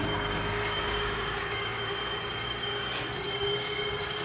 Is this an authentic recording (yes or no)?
no